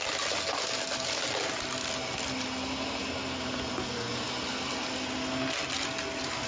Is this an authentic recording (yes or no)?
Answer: yes